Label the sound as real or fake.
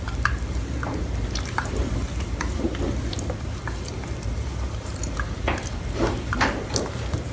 real